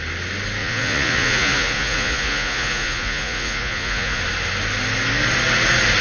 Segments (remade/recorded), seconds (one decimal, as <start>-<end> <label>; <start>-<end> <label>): 0.0-0.6 recorded; 0.6-4.2 remade; 4.2-6.0 recorded